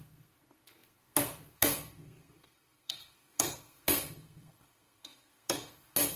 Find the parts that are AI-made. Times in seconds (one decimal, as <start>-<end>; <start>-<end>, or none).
0.0-6.2